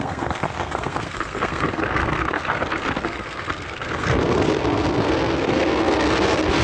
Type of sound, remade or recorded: remade